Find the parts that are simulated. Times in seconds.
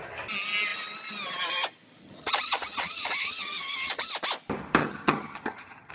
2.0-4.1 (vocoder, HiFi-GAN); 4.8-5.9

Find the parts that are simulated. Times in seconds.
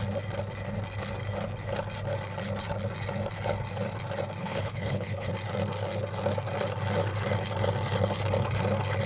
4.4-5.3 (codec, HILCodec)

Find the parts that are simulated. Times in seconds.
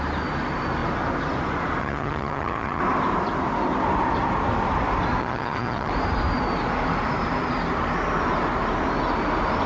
1.8-2.8 (vocoder, HiFi-GAN); 5.2-5.9